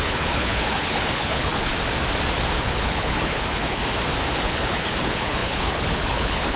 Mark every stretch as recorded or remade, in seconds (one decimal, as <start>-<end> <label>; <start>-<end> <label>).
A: 0.0-1.7 remade; 1.7-2.5 recorded; 2.5-3.8 remade; 3.8-4.4 recorded; 4.4-6.6 remade